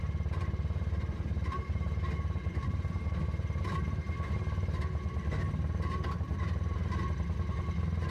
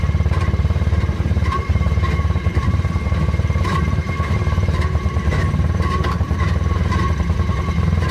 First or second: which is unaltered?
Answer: first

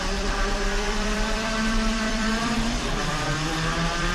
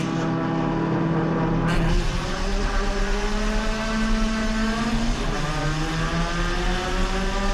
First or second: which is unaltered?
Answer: second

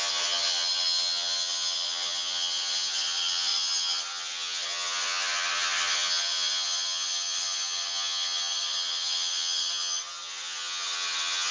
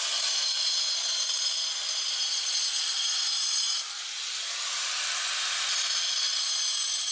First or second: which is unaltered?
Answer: second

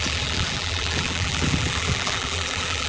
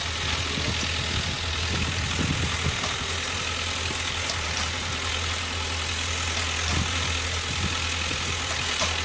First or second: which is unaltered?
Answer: second